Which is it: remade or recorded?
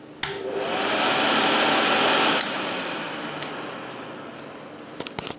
recorded